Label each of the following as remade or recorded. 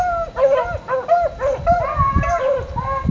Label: recorded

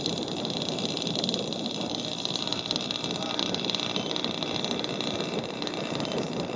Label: recorded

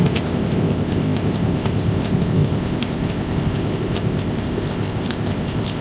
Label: remade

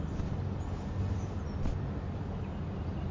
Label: recorded